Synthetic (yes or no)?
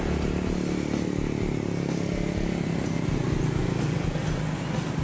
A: no